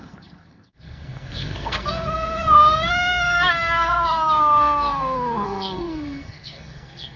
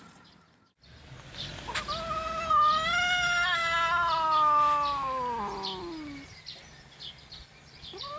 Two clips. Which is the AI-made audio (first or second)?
first